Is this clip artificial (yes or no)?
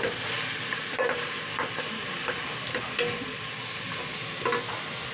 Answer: no